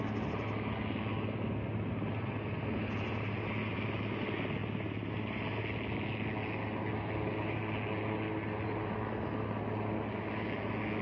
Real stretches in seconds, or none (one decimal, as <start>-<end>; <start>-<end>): 0.0-11.0